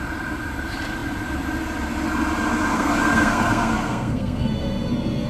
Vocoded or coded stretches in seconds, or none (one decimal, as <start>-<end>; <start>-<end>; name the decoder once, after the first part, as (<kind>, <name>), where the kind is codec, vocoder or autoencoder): 2.7-5.3 (codec, SNAC)